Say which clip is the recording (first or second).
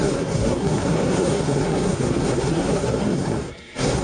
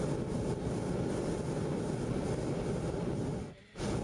second